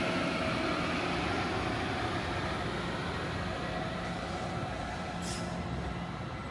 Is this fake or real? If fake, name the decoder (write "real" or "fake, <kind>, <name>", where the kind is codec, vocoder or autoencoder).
real